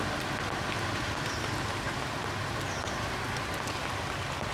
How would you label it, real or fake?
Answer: real